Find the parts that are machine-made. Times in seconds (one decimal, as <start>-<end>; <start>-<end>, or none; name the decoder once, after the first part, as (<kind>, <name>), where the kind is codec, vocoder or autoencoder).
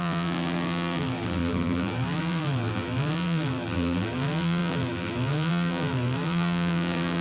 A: 0.0-7.2 (vocoder, BigVGAN v2)